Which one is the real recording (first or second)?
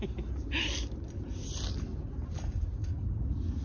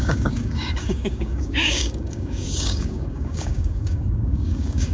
first